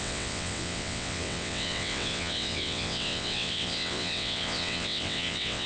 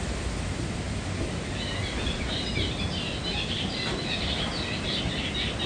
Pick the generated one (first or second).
first